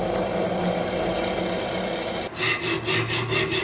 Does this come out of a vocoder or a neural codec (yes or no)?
no